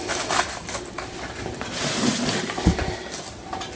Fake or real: real